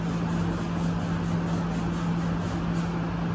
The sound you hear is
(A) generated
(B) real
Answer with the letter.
B